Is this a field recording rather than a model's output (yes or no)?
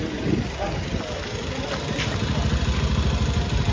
yes